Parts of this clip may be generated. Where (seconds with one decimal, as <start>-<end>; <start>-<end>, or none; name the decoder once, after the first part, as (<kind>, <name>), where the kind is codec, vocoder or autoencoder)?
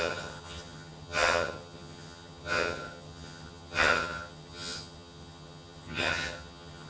0.0-6.9 (vocoder, HiFi-GAN)